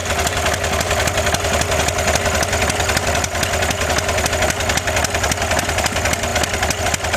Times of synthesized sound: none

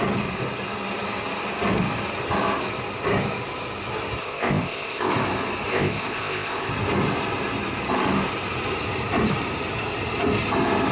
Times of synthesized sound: 4.2-5.1 (codec, ZipCodec); 5.7-6.7

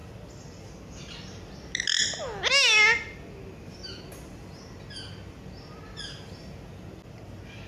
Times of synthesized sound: none